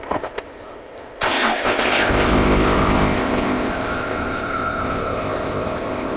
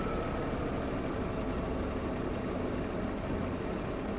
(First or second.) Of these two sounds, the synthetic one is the first